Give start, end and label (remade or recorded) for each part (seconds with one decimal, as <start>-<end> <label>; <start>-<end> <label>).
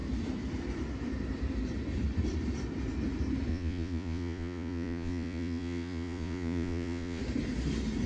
0.0-3.5 recorded; 3.5-7.2 remade; 7.2-8.1 recorded